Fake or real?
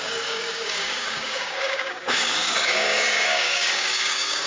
fake